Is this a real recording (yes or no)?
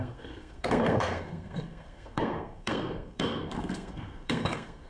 no